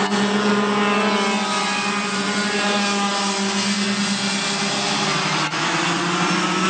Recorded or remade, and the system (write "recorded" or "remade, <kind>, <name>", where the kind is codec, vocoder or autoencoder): recorded